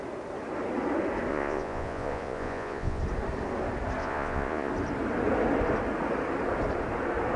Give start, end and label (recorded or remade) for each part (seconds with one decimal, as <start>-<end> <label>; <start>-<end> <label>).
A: 0.0-1.3 recorded; 1.3-3.0 remade; 3.0-4.0 recorded; 4.0-4.7 remade; 4.7-7.4 recorded